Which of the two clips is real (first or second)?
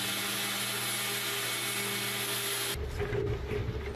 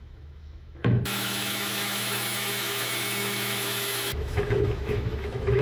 first